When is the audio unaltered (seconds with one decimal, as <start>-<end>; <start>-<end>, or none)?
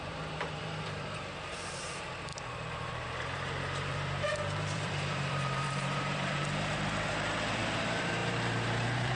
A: none